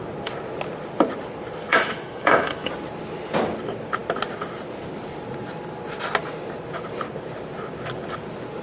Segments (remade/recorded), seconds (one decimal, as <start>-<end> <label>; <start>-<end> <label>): 0.0-1.7 recorded; 1.7-2.7 remade; 2.7-8.6 recorded